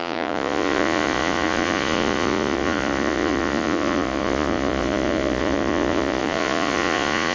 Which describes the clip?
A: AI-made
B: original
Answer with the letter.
A